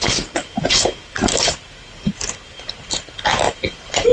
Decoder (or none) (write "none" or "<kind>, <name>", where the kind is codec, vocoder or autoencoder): none